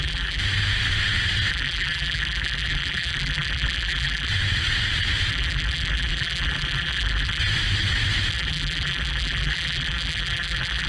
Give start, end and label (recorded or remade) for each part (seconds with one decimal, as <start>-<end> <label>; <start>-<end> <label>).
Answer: 0.0-0.4 remade; 0.4-1.5 recorded; 1.5-4.3 remade; 4.3-5.3 recorded; 5.3-7.4 remade; 7.4-8.3 recorded; 8.3-10.9 remade